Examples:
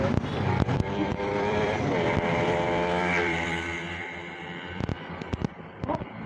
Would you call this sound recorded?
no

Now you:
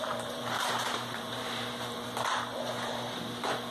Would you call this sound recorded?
no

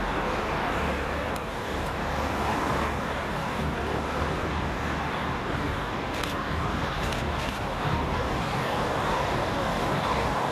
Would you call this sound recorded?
no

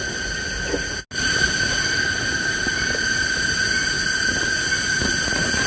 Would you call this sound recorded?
yes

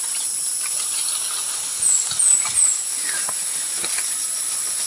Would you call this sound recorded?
yes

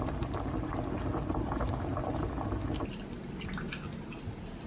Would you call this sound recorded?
yes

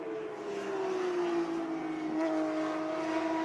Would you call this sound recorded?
yes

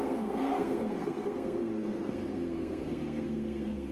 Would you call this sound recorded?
no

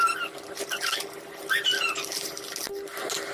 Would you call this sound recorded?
yes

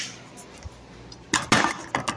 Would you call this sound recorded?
yes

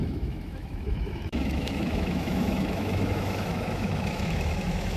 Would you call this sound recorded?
no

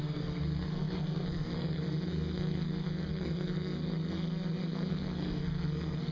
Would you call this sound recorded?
no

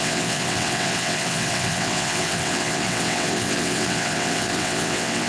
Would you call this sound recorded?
no